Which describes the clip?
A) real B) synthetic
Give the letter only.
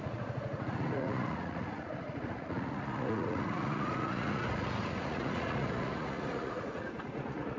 B